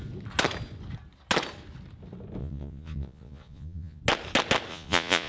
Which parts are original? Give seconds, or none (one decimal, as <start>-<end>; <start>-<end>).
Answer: 0.0-2.4; 4.0-4.7